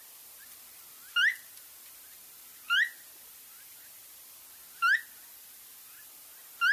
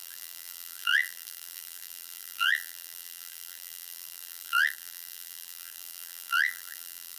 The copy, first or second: second